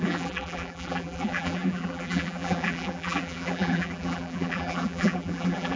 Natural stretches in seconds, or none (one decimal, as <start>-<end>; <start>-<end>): none